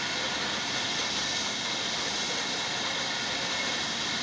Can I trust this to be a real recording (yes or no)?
yes